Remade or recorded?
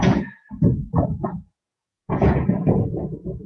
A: remade